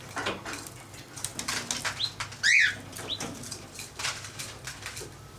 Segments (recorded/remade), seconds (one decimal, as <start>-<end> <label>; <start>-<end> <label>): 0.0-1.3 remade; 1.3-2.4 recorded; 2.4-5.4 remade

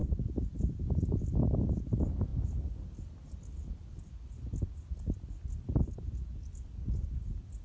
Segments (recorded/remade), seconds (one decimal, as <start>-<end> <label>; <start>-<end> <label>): 0.0-6.3 recorded; 6.3-7.1 remade; 7.1-7.6 recorded

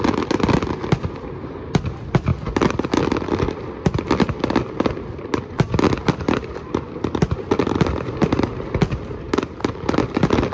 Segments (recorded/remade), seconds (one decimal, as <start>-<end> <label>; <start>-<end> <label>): 0.0-6.0 recorded; 6.0-8.5 remade; 8.5-10.5 recorded

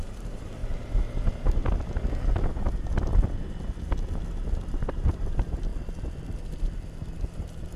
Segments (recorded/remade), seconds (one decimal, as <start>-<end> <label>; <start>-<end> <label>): 0.0-1.6 remade; 1.6-4.5 recorded; 4.5-5.7 remade; 5.7-7.3 recorded; 7.3-7.8 remade